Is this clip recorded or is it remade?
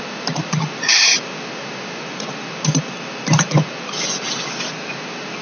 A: recorded